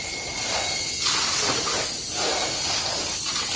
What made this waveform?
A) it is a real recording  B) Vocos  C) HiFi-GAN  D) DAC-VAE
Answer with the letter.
A